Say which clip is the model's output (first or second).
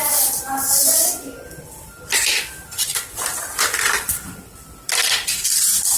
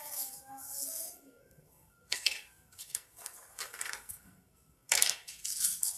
second